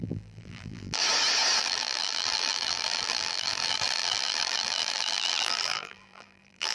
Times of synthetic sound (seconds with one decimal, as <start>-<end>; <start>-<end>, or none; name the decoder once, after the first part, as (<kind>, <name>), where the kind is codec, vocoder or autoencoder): 0.0-1.0 (vocoder, BigVGAN v2); 1.6-6.7